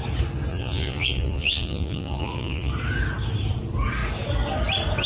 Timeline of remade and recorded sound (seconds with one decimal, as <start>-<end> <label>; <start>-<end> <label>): 0.0-0.5 recorded; 0.5-2.7 remade; 2.7-5.1 recorded